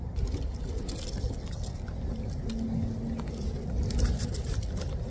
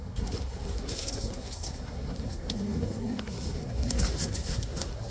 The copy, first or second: second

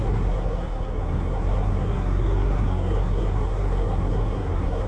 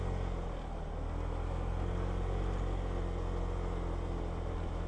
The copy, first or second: first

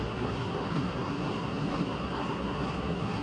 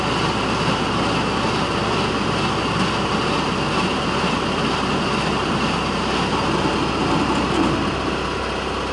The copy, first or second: first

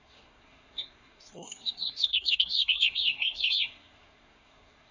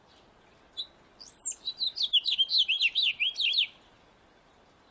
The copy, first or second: first